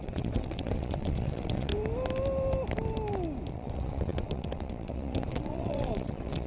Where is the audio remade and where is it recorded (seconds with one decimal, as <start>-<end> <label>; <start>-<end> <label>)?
0.0-1.7 remade; 1.7-3.5 recorded; 3.5-6.5 remade